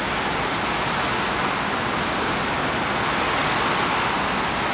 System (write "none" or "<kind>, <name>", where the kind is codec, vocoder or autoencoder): none